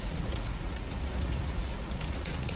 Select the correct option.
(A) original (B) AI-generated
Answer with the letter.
B